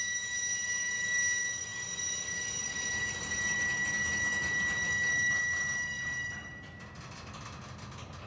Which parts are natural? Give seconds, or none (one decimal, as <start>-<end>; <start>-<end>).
0.0-8.3